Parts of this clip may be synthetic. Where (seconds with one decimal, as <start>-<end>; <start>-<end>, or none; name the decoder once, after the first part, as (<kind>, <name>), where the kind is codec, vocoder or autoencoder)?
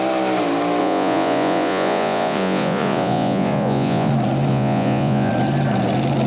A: 0.8-4.1 (vocoder, Vocos); 4.5-5.3